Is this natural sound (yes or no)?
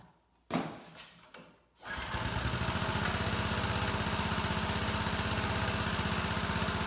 yes